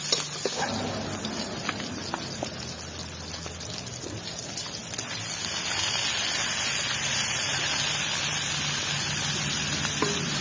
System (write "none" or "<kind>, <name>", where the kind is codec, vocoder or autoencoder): none